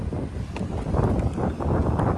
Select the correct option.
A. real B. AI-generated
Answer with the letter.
A